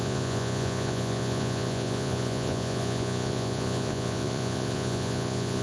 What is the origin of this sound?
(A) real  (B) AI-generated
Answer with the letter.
B